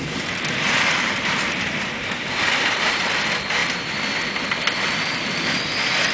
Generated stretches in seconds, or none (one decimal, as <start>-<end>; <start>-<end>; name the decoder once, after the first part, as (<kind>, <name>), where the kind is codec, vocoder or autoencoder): 0.0-3.6 (vocoder, BigVGAN v2)